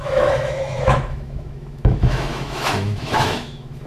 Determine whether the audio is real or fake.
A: fake